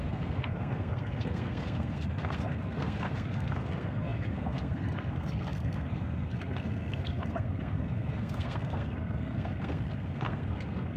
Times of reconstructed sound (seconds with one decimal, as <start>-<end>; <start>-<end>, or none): 0.0-11.0